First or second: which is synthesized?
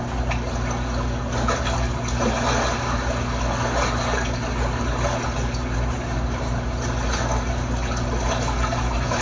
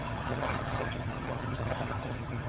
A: second